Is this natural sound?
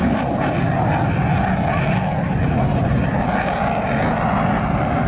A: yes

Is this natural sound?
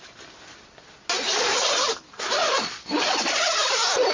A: yes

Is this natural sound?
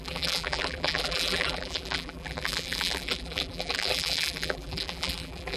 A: no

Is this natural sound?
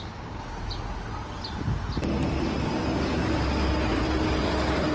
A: yes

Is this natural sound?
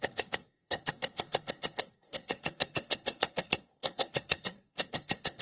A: no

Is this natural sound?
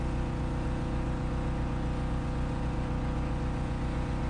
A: no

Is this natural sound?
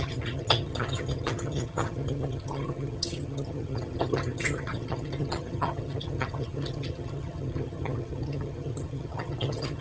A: no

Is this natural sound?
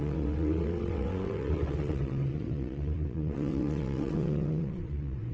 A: no